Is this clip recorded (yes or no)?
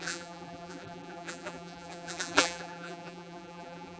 no